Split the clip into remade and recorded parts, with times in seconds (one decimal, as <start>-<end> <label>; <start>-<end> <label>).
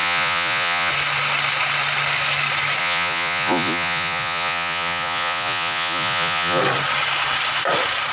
0.0-0.9 remade; 0.9-2.8 recorded; 2.8-6.6 remade; 6.6-8.1 recorded